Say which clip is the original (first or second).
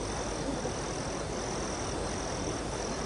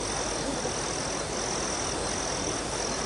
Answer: second